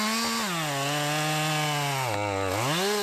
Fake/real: real